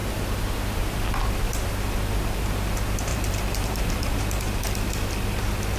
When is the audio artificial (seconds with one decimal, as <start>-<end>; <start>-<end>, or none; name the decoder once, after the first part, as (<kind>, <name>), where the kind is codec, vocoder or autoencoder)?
3.1-4.2 (vocoder, BigVGAN v2)